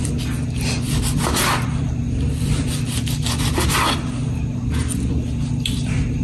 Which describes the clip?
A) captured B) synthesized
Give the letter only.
A